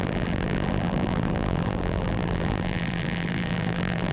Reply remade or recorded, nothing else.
remade